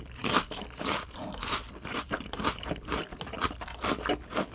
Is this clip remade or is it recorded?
remade